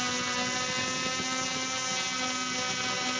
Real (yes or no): yes